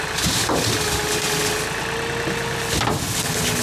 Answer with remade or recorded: recorded